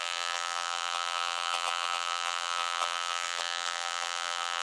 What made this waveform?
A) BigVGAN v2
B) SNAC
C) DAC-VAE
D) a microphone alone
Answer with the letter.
A